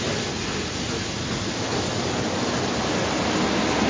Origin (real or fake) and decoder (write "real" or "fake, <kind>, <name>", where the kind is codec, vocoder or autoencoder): real